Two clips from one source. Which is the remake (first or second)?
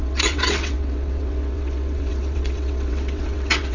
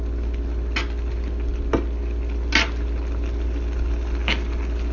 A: first